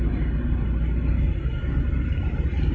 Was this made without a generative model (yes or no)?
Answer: yes